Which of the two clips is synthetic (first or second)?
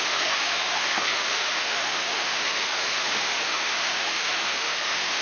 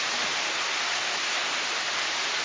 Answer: first